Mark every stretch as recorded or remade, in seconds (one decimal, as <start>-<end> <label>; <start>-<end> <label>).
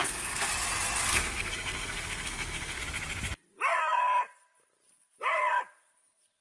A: 0.0-0.5 remade; 0.5-1.1 recorded; 1.1-2.8 remade; 2.8-6.4 recorded